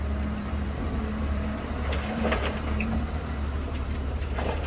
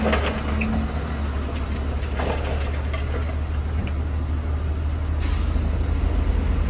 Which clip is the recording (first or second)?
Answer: second